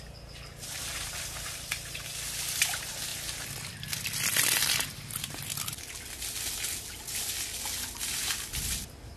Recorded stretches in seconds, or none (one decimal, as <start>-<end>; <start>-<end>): 0.0-9.2